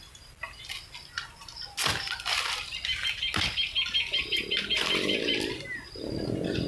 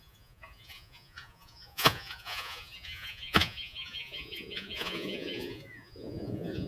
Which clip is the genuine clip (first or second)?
first